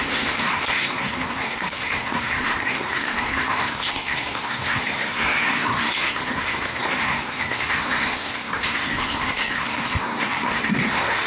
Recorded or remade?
remade